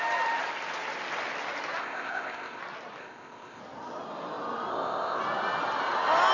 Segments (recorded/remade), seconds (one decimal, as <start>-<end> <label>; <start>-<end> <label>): 0.0-1.8 recorded; 1.8-2.6 remade; 2.6-3.0 recorded; 3.0-3.6 remade; 3.6-4.7 recorded; 4.7-5.2 remade; 5.2-6.3 recorded